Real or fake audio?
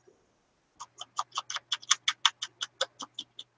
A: real